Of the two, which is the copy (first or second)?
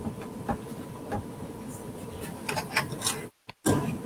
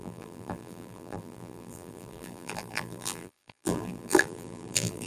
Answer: second